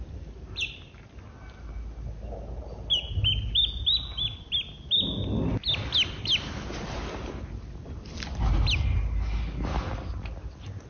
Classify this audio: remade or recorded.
recorded